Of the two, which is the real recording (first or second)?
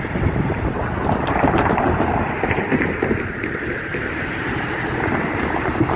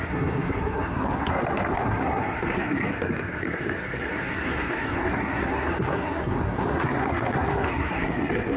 first